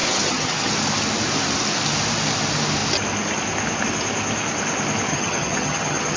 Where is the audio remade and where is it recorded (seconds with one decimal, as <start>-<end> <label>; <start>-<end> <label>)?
0.0-0.7 remade; 0.7-5.1 recorded; 5.1-6.2 remade